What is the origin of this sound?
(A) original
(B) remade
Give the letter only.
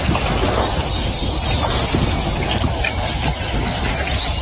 A